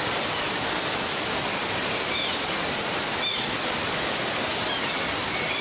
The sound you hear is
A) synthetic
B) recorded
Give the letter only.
A